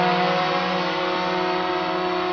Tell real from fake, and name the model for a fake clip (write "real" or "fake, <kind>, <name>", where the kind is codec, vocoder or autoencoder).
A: real